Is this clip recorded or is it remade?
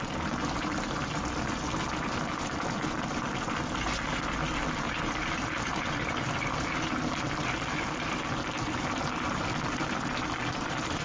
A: recorded